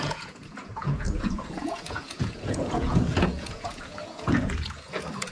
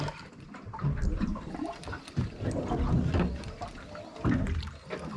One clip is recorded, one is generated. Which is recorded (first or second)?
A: second